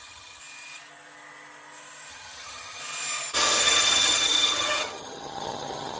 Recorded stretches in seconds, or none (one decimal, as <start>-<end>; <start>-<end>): 0.4-2.1; 2.8-3.6